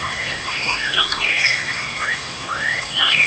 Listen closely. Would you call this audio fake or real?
fake